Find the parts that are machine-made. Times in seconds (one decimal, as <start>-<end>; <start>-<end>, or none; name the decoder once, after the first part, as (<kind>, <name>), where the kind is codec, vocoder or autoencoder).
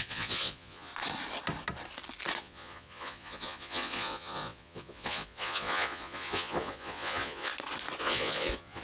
0.0-0.9 (vocoder, Vocos); 2.4-7.5; 8.0-8.8